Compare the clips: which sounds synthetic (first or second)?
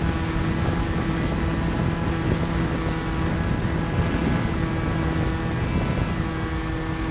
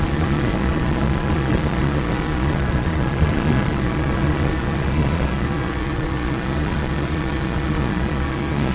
second